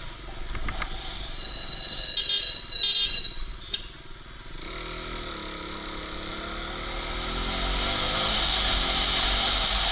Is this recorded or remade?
recorded